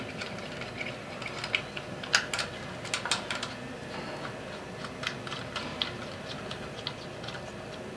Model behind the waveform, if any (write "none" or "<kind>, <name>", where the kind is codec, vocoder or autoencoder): none